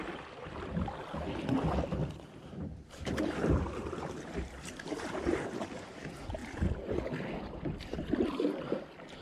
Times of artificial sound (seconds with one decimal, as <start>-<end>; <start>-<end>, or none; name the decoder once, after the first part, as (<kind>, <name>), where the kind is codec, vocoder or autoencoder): 2.0-6.0 (vocoder, BigVGAN v2)